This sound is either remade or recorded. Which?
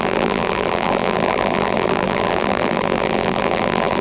remade